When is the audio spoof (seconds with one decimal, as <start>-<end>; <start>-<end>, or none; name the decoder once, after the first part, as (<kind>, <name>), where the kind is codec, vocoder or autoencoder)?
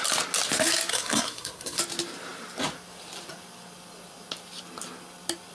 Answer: 0.9-1.8 (codec, SNAC)